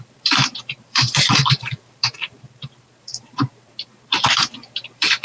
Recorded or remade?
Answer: remade